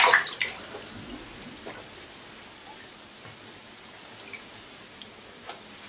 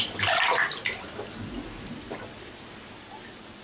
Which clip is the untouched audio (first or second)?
second